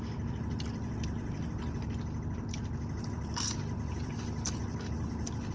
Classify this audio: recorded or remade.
recorded